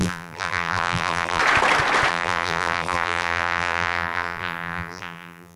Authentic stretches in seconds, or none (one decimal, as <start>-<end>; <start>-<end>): 1.4-2.1